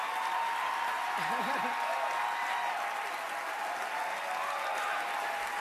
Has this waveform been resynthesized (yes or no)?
no